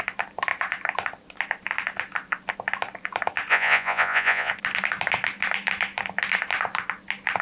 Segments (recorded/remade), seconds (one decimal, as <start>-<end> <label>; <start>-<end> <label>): 0.0-3.5 recorded; 3.5-4.5 remade; 4.5-7.4 recorded